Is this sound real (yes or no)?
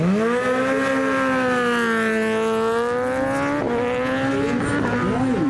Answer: yes